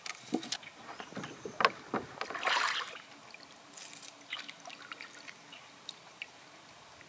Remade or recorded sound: recorded